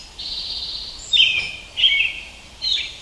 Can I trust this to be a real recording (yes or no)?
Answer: no